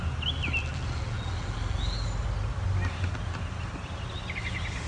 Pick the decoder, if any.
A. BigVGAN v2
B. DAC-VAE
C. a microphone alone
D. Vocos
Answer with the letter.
C